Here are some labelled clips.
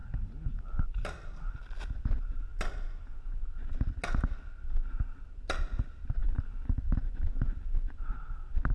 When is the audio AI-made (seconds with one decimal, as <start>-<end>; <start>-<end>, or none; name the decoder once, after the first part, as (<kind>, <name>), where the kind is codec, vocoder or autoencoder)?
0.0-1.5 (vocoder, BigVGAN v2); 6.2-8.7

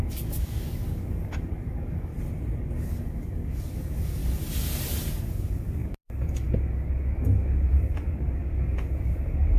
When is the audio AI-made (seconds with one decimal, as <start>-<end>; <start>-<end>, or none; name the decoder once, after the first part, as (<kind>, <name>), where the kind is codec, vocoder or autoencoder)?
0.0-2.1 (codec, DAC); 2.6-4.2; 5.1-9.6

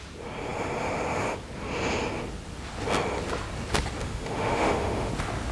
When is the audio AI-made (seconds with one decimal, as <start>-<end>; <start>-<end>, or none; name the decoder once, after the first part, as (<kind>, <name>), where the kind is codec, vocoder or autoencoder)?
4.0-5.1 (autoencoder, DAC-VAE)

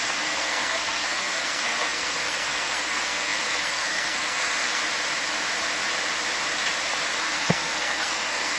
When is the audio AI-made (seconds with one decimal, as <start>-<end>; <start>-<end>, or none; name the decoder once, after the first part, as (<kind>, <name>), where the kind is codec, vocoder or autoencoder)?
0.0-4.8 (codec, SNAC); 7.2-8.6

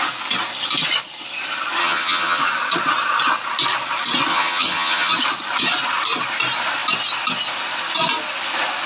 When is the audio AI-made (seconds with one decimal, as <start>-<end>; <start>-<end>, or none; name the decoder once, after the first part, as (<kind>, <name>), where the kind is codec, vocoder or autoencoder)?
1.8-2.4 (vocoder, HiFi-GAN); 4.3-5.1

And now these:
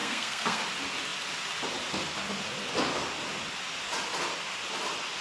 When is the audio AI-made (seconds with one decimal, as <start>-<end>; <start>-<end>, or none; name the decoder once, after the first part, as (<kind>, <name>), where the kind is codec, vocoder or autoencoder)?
0.0-0.6 (codec, SNAC)

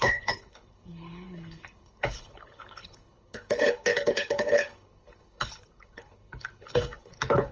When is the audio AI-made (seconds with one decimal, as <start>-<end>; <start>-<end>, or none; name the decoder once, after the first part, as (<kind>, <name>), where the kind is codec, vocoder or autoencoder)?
0.0-7.5 (codec, HILCodec)

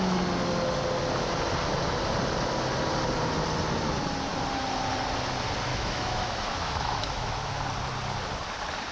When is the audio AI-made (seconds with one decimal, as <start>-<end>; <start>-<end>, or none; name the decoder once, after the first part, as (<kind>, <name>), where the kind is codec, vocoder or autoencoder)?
5.7-7.6 (autoencoder, DAC-VAE)